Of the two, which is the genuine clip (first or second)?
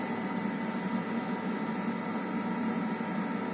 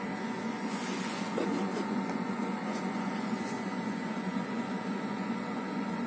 first